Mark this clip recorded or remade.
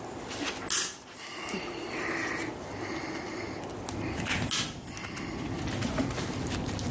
recorded